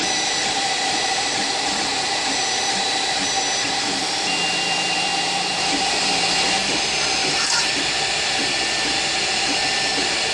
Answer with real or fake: fake